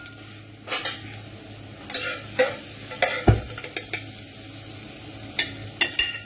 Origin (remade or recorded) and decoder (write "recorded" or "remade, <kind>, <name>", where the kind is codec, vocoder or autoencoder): recorded